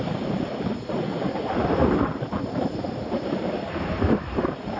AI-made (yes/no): yes